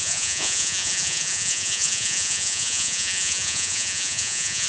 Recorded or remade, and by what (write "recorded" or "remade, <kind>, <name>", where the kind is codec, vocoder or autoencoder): remade, vocoder, Vocos